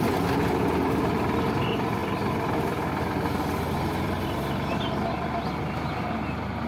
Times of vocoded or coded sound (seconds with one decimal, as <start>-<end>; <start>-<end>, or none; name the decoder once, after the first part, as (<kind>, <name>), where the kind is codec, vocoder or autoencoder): 0.0-6.7 (vocoder, BigVGAN v2)